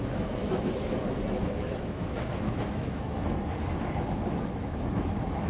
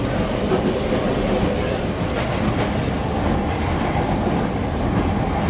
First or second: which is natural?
second